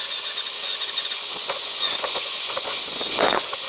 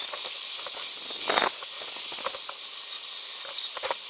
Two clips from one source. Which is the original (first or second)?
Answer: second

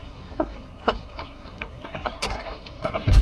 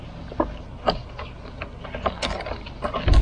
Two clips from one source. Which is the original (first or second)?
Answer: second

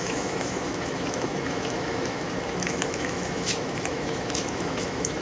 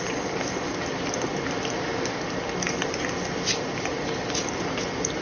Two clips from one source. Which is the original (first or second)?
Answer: second